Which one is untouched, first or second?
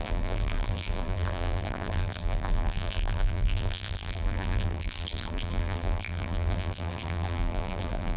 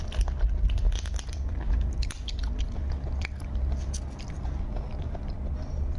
second